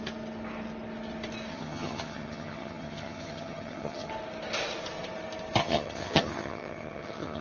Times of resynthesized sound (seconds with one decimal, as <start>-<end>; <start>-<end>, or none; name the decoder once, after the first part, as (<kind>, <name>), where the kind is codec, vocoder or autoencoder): 1.5-4.1 (vocoder, HiFi-GAN); 5.6-7.4